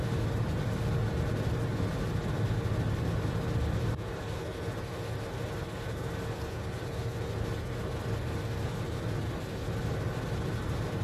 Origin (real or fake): real